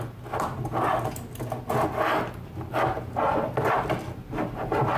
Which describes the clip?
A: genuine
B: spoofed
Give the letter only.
A